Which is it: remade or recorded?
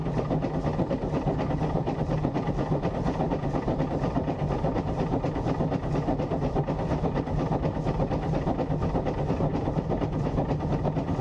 recorded